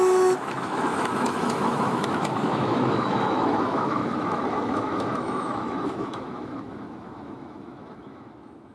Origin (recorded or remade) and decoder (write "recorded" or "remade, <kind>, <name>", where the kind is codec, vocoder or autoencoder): remade, autoencoder, DAC-VAE